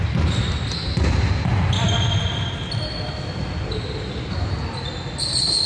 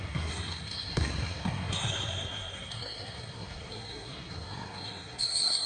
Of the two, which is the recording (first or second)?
first